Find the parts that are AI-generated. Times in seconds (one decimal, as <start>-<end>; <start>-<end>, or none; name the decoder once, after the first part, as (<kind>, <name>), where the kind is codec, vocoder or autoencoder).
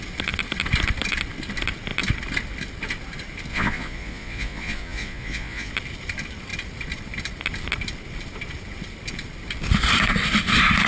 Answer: 3.5-5.7 (vocoder, Vocos)